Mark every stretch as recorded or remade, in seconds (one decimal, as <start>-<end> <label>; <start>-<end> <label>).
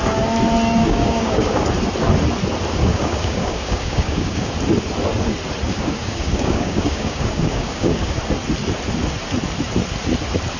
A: 0.0-0.8 recorded; 0.8-1.7 remade; 1.7-2.8 recorded; 2.8-4.5 remade; 4.5-5.7 recorded; 5.7-8.2 remade; 8.2-10.6 recorded